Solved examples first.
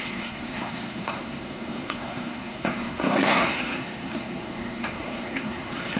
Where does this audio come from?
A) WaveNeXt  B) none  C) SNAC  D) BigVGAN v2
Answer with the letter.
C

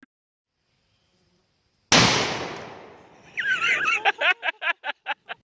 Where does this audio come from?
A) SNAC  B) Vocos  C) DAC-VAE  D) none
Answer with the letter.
D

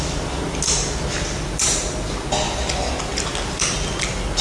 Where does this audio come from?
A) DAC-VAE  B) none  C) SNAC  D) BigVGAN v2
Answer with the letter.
B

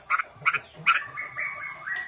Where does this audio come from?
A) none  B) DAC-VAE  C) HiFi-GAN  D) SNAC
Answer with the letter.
A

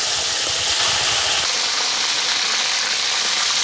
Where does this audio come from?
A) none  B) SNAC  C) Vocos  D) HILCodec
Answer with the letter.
A